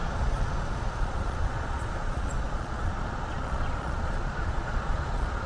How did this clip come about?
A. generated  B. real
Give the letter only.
A